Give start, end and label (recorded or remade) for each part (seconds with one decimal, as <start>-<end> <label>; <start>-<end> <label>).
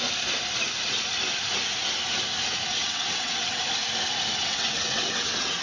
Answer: 0.0-2.8 recorded; 2.8-3.6 remade; 3.6-4.4 recorded; 4.4-5.6 remade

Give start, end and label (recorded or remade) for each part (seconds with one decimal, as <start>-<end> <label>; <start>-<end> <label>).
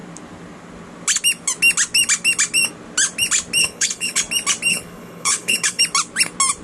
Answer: 0.0-3.6 recorded; 3.6-4.2 remade; 4.2-4.7 recorded; 4.7-5.8 remade; 5.8-6.6 recorded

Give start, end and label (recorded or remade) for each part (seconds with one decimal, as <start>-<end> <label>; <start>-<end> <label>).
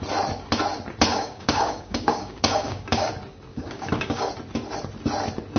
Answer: 0.0-1.1 recorded; 1.1-3.1 remade; 3.1-3.5 recorded; 3.5-4.3 remade; 4.3-5.6 recorded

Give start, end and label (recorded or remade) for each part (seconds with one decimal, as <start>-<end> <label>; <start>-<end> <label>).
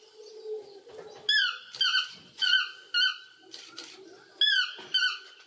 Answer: 0.0-2.3 recorded; 2.3-2.7 remade; 2.7-5.0 recorded; 5.0-5.5 remade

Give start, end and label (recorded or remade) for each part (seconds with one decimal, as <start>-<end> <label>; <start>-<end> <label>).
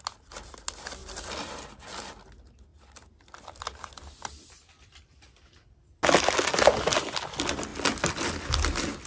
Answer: 0.0-1.0 recorded; 1.0-1.7 remade; 1.7-2.7 recorded; 2.7-5.3 remade; 5.3-9.1 recorded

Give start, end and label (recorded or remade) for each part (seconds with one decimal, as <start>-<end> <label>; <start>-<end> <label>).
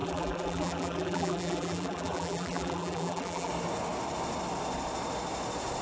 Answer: 0.0-3.5 remade; 3.5-5.8 recorded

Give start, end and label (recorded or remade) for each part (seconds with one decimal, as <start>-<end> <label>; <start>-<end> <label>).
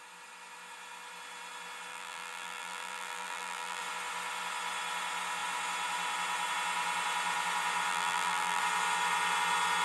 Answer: 0.0-1.9 recorded; 1.9-3.8 remade; 3.8-7.9 recorded; 7.9-8.6 remade; 8.6-9.8 recorded